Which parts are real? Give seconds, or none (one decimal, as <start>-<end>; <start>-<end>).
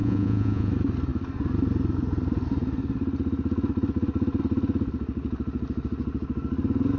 0.7-7.0